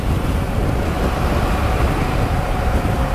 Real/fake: real